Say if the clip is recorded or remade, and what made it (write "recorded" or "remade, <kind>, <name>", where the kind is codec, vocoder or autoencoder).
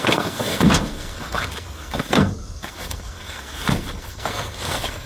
remade, codec, SNAC